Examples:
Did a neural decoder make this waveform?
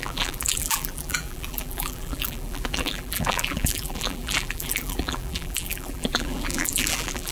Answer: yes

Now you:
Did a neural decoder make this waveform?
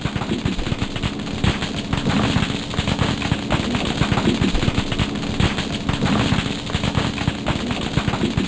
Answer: no